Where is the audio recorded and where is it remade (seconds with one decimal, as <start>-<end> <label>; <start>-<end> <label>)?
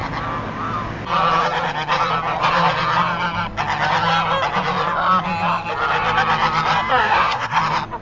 0.0-6.9 recorded; 6.9-7.6 remade; 7.6-8.0 recorded